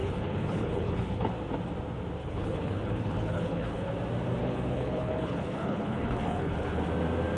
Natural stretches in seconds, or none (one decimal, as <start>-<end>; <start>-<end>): 1.3-2.2; 3.9-4.4; 6.8-7.4